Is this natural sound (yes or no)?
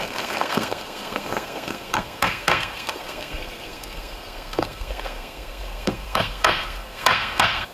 no